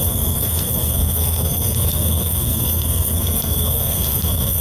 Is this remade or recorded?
remade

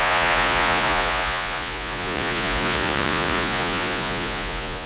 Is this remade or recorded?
remade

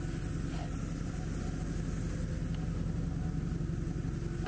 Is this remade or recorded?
recorded